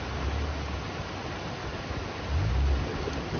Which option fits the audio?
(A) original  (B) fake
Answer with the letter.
A